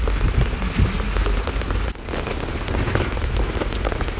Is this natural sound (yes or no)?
yes